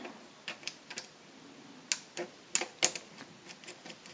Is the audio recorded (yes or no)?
yes